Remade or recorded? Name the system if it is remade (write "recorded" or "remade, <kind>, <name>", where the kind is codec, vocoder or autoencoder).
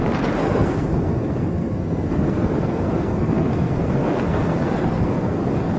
remade, codec, SNAC